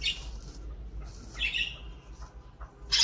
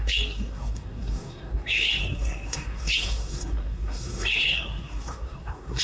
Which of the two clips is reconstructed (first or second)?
second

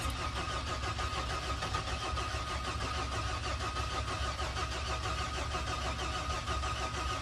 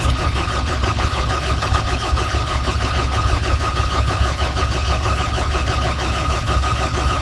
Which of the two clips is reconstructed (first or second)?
second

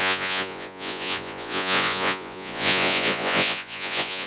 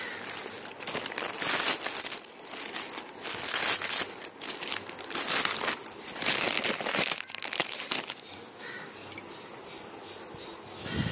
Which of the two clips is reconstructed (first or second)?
first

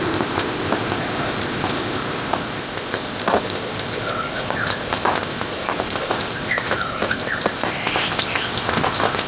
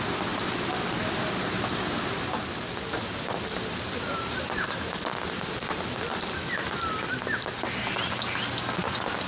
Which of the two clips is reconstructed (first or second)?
first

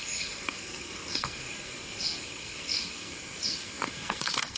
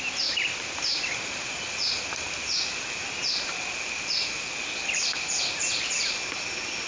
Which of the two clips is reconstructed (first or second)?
first